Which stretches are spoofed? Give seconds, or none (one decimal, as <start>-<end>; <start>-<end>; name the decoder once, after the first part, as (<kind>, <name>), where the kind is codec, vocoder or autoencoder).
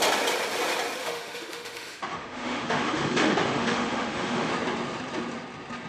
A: 1.0-4.5 (autoencoder, DAC-VAE)